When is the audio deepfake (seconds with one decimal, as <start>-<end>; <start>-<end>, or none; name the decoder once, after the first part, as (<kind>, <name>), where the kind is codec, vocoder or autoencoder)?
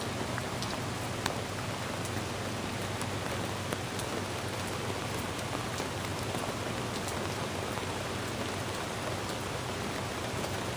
none